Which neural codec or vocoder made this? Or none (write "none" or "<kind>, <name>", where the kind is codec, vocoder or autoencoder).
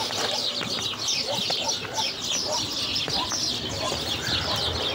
none